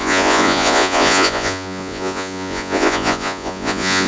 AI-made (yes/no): yes